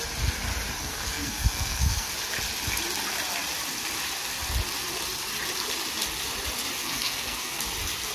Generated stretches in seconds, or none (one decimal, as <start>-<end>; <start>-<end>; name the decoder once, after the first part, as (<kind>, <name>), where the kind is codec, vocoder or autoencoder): 0.8-2.1 (codec, SNAC); 6.8-7.6